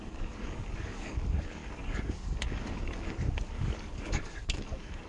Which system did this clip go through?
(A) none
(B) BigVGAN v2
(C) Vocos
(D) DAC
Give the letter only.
D